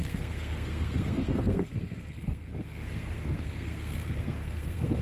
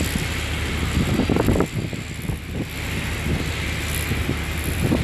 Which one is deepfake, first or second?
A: first